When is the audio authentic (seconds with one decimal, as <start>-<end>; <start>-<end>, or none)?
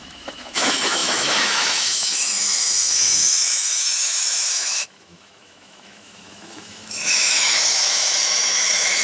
none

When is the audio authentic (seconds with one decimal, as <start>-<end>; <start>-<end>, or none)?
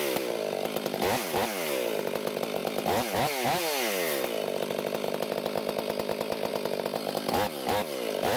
0.0-8.4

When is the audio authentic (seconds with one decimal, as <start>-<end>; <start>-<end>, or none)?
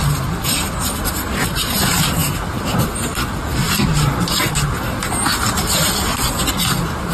0.0-7.1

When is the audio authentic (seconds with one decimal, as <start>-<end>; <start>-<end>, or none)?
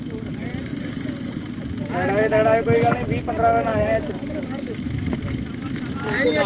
0.0-6.5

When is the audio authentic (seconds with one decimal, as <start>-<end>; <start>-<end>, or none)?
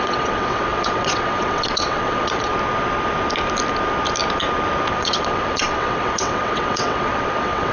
2.5-4.9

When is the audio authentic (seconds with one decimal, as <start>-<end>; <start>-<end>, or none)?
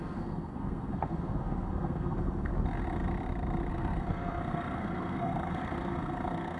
2.5-3.7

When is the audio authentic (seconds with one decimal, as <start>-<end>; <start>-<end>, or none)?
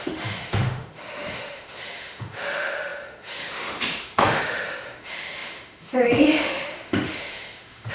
none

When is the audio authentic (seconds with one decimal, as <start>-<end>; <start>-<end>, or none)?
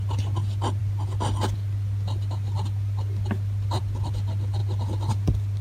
0.0-5.6